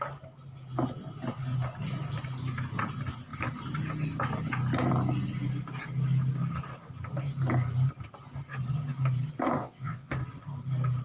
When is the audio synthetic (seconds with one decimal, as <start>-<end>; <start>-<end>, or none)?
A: 9.6-10.1